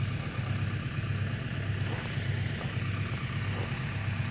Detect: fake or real real